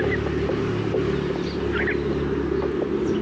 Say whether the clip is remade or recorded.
recorded